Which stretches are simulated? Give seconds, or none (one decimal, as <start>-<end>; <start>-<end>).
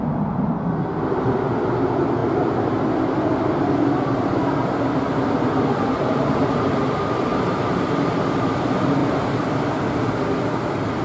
6.0-6.8; 7.3-8.5; 9.0-9.6